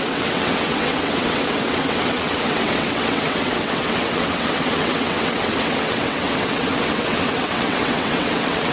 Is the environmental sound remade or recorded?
remade